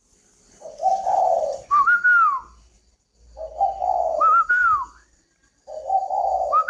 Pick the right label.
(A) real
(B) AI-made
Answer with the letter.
A